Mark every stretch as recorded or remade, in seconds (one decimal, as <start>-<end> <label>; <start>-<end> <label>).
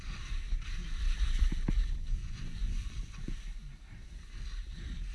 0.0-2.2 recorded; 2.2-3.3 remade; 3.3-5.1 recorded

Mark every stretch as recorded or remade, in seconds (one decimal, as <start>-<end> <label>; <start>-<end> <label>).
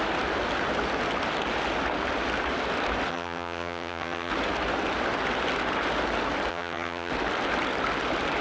0.0-3.1 recorded; 3.1-4.3 remade; 4.3-6.5 recorded; 6.5-7.1 remade; 7.1-8.4 recorded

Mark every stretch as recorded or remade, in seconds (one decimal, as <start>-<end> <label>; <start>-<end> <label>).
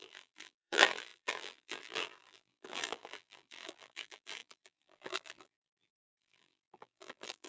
0.0-7.5 remade